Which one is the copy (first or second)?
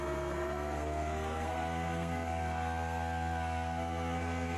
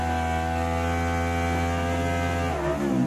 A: first